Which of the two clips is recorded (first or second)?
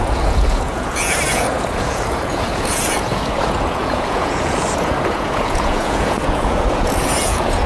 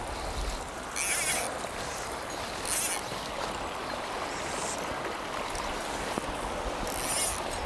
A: second